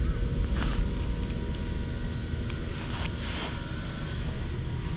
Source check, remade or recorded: recorded